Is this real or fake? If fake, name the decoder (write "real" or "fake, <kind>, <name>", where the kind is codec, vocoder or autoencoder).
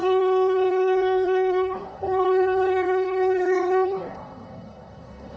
fake, codec, SNAC